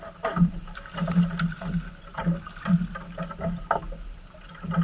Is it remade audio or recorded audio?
recorded